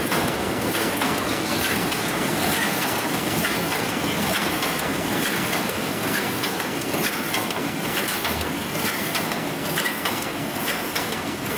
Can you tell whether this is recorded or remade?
remade